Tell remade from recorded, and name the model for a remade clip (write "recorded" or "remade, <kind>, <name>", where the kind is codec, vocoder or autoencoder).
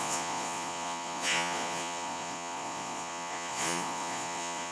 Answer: remade, vocoder, Vocos